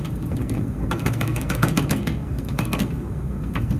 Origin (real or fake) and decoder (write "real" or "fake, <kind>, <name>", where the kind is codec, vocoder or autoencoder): fake, codec, SNAC